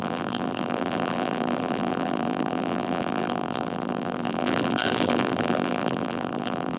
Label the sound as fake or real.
fake